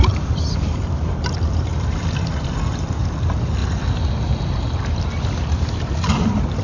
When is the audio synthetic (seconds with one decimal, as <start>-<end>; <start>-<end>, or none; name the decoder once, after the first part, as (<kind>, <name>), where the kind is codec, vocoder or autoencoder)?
0.0-6.6 (vocoder, BigVGAN v2)